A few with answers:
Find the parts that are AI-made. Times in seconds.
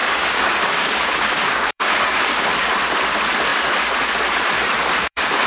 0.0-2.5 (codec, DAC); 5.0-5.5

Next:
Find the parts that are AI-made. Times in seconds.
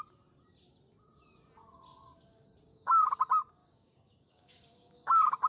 2.7-3.2 (codec, DAC); 3.6-5.5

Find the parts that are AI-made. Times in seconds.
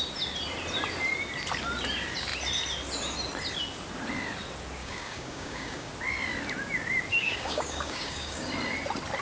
4.8-5.9 (codec, DAC); 7.1-8.5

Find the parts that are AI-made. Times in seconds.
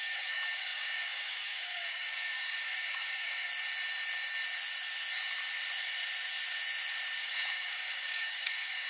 0.0-3.5 (codec, DAC); 7.2-8.9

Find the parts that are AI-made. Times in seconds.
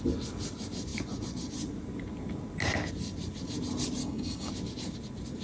4.0-4.5 (codec, DAC)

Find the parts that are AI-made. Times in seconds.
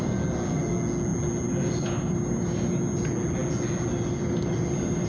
none